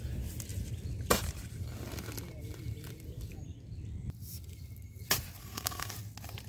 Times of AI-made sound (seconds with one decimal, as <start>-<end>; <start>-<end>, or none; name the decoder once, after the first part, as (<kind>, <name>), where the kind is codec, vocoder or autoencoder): 5.4-5.9 (codec, SNAC)